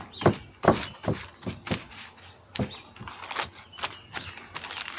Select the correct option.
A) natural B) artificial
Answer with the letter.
A